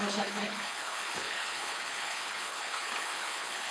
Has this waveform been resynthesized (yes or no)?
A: yes